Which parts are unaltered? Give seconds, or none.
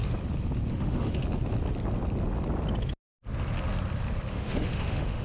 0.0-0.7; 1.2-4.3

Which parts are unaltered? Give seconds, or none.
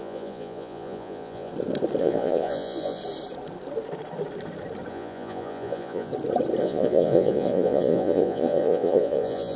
1.5-2.0; 3.0-4.9; 6.1-6.6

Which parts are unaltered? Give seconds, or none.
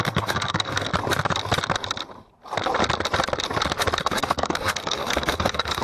0.9-4.0